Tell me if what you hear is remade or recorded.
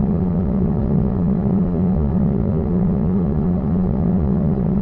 remade